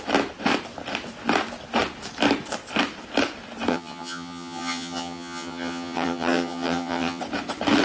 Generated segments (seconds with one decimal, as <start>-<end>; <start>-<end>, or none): 3.7-7.2